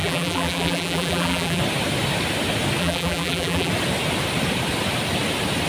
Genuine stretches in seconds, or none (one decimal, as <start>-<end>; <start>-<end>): 1.6-2.8; 3.7-5.7